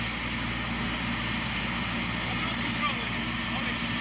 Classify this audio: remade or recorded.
recorded